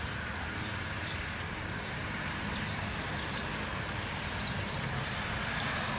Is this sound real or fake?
real